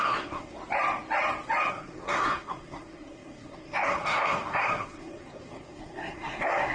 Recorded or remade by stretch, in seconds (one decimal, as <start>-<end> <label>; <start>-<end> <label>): 0.0-0.6 remade; 0.6-1.7 recorded; 1.7-6.7 remade